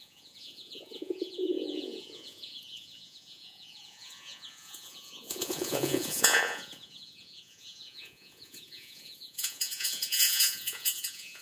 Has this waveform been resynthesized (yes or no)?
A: yes